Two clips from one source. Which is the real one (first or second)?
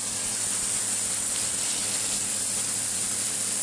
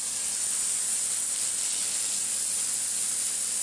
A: second